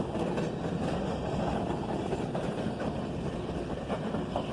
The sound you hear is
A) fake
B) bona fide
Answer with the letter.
B